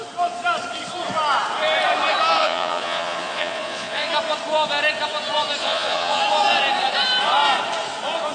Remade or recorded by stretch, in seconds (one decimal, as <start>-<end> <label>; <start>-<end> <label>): 0.0-2.4 recorded; 2.4-4.1 remade; 4.1-5.6 recorded; 5.6-6.2 remade; 6.2-8.3 recorded